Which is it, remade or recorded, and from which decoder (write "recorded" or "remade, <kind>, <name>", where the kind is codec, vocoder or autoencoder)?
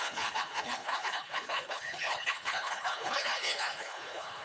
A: remade, codec, HILCodec